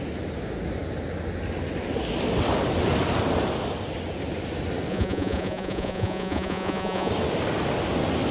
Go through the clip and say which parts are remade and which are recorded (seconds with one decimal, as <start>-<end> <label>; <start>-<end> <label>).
0.0-4.9 recorded; 4.9-7.1 remade; 7.1-8.3 recorded